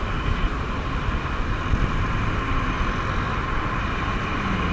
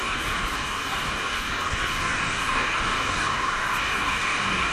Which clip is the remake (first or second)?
second